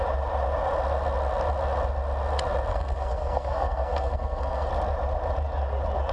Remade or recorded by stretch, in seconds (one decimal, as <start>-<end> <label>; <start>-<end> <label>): 0.0-2.7 recorded; 2.7-4.7 remade; 4.7-6.1 recorded